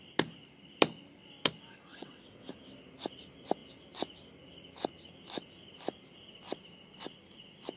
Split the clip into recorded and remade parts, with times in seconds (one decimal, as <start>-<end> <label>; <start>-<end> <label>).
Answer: 0.0-1.9 recorded; 1.9-2.5 remade; 2.5-7.8 recorded